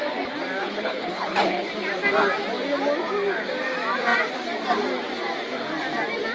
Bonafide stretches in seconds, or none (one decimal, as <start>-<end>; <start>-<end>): 0.0-0.6; 1.7-6.3